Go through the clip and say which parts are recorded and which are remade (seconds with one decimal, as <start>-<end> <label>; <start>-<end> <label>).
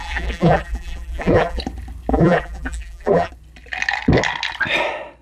0.0-1.6 remade; 1.6-2.1 recorded; 2.1-3.3 remade; 3.3-5.2 recorded